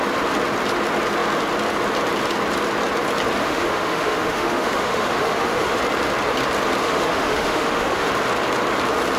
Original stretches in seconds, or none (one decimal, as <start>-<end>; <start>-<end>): 0.0-3.4; 5.8-6.8; 8.1-9.2